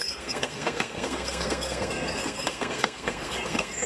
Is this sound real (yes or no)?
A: no